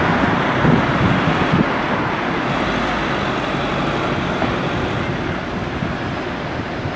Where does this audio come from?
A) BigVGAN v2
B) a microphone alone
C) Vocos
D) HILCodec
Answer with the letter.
B